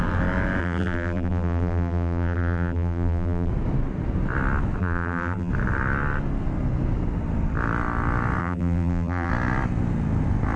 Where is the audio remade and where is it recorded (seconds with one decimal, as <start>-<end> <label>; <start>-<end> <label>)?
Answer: 0.0-0.6 recorded; 0.6-3.5 remade; 3.5-4.8 recorded; 4.8-5.5 remade; 5.5-8.4 recorded; 8.4-9.3 remade; 9.3-10.6 recorded